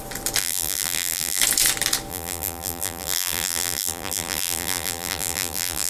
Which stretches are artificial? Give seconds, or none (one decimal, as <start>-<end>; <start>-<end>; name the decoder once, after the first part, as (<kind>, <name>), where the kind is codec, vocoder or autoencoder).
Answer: 0.4-1.4 (vocoder, BigVGAN v2); 2.1-5.9